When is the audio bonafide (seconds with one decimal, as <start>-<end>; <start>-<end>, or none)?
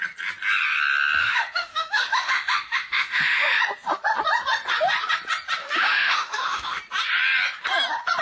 0.0-1.2; 3.6-5.6; 6.8-8.2